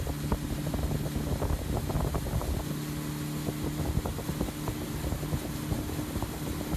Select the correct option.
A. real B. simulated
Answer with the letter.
A